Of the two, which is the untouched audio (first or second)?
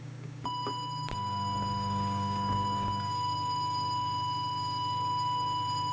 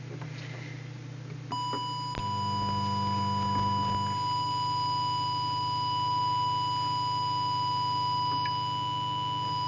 second